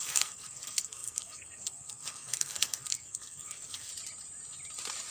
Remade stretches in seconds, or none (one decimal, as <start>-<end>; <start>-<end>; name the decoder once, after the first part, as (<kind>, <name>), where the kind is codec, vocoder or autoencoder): 0.0-3.9 (codec, SNAC)